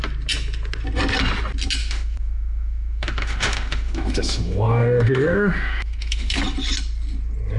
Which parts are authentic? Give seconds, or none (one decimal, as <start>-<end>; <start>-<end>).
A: 0.0-1.8; 6.4-7.6